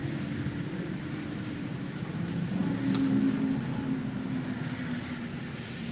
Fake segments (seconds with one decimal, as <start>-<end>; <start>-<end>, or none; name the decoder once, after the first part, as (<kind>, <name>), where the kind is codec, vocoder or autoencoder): none